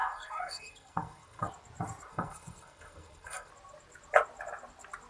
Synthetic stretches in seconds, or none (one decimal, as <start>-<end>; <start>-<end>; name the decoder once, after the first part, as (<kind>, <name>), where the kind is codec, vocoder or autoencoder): 0.0-1.5 (codec, SNAC); 2.1-3.5